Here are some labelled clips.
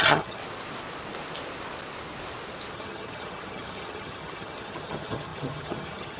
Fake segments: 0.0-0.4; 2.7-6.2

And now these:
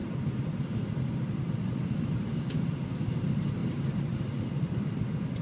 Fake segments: none

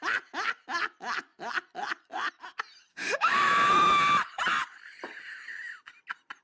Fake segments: 2.9-3.5